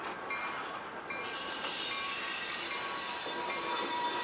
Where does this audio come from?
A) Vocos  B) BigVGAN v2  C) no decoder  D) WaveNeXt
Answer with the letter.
C